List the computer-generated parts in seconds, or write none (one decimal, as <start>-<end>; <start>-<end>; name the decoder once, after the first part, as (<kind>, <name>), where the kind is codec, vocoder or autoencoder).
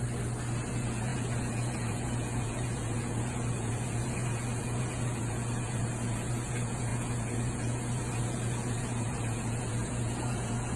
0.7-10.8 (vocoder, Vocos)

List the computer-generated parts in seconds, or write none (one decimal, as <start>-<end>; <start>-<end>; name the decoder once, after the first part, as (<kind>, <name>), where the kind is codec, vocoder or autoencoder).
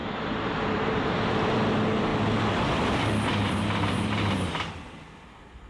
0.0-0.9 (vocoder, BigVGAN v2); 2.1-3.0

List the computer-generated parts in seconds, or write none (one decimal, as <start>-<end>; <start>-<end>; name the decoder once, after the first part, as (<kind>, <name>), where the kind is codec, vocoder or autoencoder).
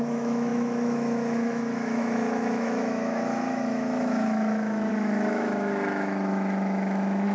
0.0-7.3 (autoencoder, DAC-VAE)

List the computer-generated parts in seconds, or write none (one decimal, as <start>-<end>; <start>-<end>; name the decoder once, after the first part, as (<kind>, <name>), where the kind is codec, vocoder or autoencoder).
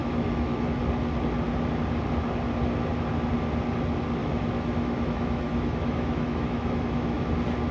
0.0-0.8 (autoencoder, DAC-VAE); 4.2-7.2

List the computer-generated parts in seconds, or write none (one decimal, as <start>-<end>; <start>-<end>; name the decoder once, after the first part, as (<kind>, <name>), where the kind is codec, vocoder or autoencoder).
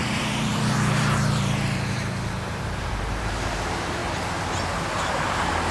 0.0-4.0 (vocoder, BigVGAN v2); 5.0-5.7